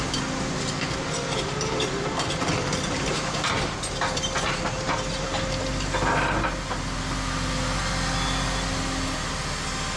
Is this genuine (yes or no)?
yes